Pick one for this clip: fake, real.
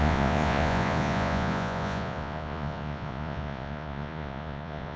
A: fake